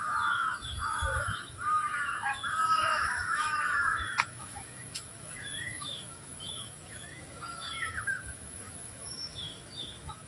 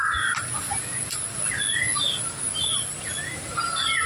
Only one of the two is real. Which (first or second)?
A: second